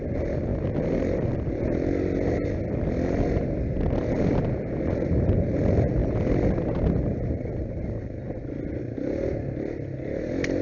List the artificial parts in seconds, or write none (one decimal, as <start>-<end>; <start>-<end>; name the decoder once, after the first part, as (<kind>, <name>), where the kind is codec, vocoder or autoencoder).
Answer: none